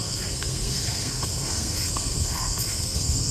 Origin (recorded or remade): remade